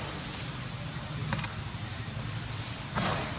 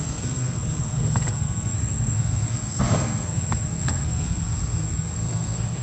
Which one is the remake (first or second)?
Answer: second